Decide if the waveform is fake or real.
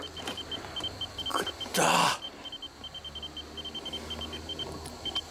real